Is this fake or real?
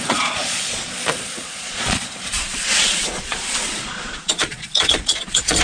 fake